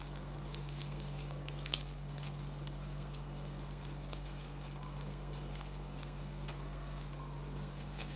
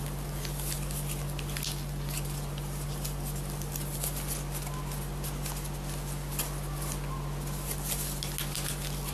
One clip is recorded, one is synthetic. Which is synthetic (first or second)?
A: first